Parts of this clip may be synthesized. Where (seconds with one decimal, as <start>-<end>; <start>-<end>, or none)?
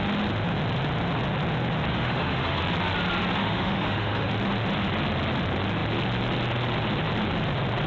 1.9-2.6; 3.4-4.3